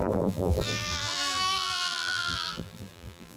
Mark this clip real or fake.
fake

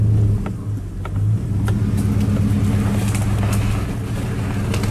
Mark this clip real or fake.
real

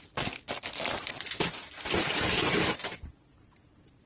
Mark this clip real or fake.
real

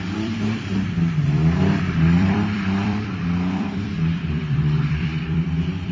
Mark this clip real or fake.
fake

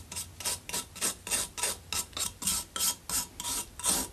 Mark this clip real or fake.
real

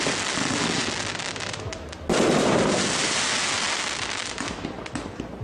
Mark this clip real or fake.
real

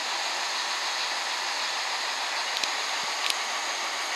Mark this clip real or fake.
real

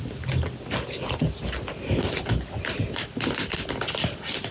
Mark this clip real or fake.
real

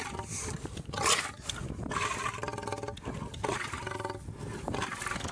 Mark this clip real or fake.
real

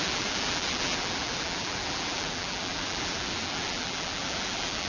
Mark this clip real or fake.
fake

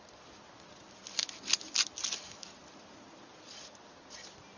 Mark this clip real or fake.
real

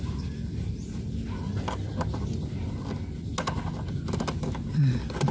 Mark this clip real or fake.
real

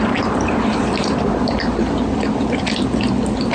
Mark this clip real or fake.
real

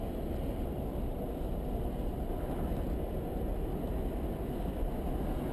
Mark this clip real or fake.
real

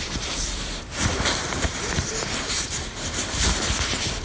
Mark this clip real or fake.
fake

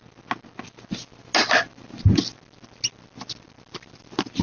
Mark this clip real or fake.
real